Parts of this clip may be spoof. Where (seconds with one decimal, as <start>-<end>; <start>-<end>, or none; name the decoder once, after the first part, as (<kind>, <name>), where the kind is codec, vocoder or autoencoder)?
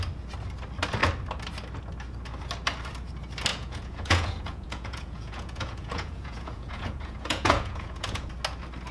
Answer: 3.5-8.3 (vocoder, Vocos)